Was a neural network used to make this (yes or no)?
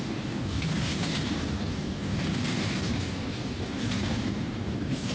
yes